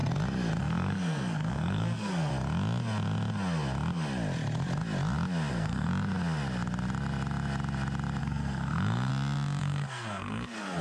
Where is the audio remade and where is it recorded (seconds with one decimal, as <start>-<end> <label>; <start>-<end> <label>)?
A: 0.0-0.6 recorded; 0.6-2.3 remade; 2.3-5.5 recorded; 5.5-5.9 remade; 5.9-8.2 recorded; 8.2-9.1 remade; 9.1-9.6 recorded; 9.6-10.8 remade